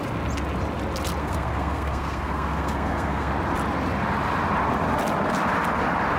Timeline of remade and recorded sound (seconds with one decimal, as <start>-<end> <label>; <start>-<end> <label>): 0.0-1.2 recorded; 1.2-3.3 remade; 3.3-6.2 recorded